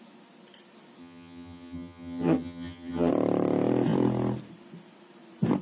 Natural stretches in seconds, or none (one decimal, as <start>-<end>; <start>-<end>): 0.0-1.0; 3.1-5.6